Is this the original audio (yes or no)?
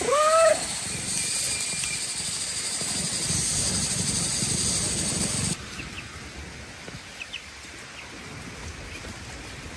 yes